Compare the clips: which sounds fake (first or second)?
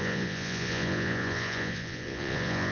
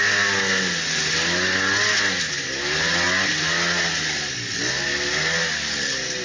first